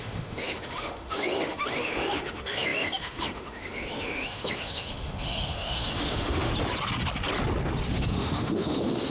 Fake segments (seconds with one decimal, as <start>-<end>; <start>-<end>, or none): 0.0-6.5; 7.9-9.1